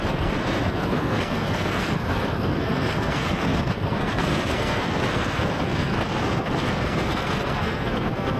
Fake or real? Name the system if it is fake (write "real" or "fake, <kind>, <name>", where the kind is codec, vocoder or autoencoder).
fake, codec, SNAC